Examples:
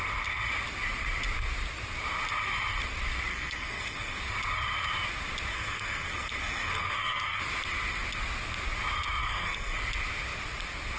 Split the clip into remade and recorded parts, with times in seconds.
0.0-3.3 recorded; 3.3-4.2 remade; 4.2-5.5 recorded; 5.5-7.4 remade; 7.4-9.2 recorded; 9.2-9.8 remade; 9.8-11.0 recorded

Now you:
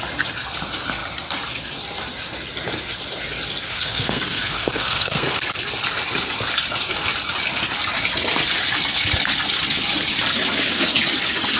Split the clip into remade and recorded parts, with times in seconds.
0.0-3.7 recorded; 3.7-5.4 remade; 5.4-11.6 recorded

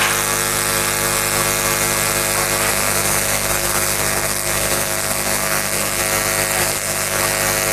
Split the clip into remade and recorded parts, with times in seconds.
0.0-2.7 recorded; 2.7-6.0 remade; 6.0-6.6 recorded; 6.6-7.2 remade; 7.2-7.7 recorded

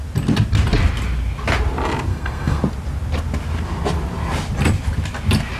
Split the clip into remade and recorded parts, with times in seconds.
0.0-2.1 recorded; 2.1-2.6 remade; 2.6-5.6 recorded

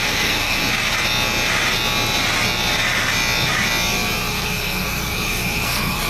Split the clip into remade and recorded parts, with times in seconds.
0.0-0.6 remade; 0.6-4.3 recorded; 4.3-6.1 remade

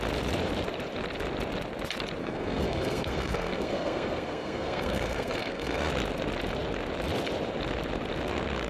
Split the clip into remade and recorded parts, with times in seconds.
0.0-2.2 recorded; 2.2-5.9 remade; 5.9-8.7 recorded